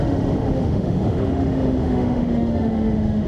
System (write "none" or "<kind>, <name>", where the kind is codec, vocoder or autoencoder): autoencoder, DAC-VAE